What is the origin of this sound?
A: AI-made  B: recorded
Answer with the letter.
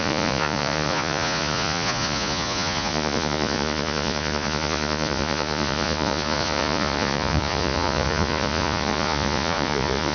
A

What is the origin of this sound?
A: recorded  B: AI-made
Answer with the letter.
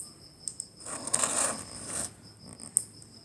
A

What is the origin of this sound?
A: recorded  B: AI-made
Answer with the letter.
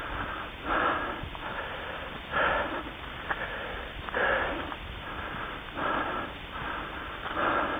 A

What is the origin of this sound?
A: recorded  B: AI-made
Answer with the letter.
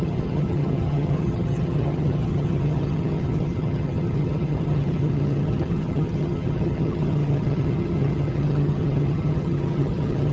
B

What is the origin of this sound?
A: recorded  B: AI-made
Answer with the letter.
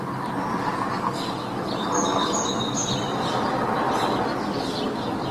A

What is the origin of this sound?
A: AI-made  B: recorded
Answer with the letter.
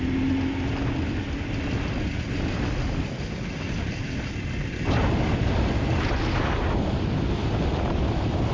B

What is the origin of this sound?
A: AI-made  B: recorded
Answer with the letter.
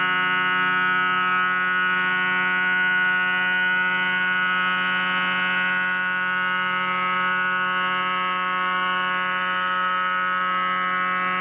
B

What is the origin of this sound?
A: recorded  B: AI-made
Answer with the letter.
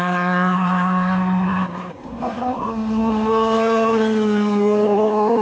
B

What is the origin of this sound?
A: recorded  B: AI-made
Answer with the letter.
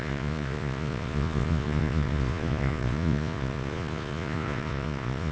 B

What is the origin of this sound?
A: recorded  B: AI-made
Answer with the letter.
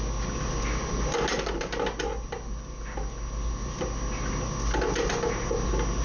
A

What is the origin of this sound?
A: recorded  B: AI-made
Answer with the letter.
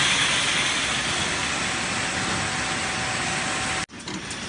A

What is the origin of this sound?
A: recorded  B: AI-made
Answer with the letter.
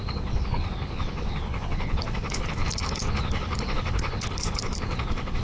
B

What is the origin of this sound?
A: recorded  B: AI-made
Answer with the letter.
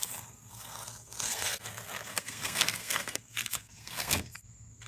B